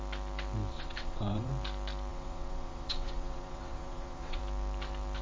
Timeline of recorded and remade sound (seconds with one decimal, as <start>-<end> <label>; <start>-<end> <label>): 0.0-0.7 recorded; 0.7-1.5 remade; 1.5-2.1 recorded; 2.1-4.4 remade; 4.4-5.2 recorded